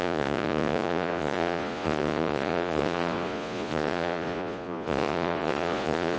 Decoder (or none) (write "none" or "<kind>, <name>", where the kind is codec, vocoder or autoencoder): vocoder, Vocos